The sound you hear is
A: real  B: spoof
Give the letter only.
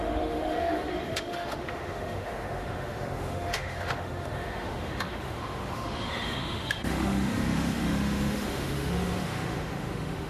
B